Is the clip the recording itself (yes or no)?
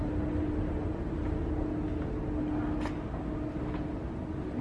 yes